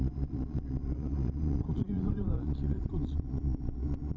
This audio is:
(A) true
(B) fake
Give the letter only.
B